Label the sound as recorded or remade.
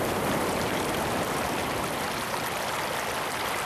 remade